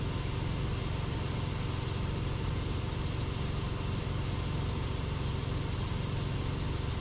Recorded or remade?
recorded